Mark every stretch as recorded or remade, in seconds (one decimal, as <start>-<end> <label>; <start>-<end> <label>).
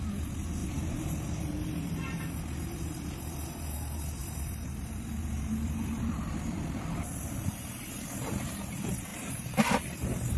0.0-0.6 recorded; 0.6-2.2 remade; 2.2-4.2 recorded; 4.2-7.9 remade; 7.9-9.1 recorded; 9.1-10.4 remade